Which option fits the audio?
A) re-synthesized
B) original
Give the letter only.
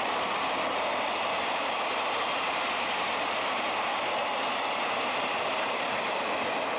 B